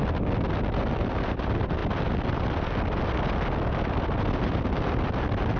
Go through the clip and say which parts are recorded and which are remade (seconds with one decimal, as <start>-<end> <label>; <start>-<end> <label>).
0.0-5.6 recorded